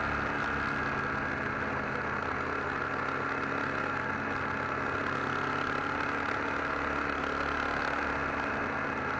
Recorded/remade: recorded